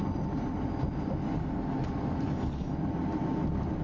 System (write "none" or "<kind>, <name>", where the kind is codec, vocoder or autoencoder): none